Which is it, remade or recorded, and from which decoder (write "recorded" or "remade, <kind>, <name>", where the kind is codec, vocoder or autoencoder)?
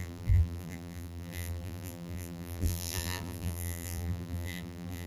remade, vocoder, BigVGAN v2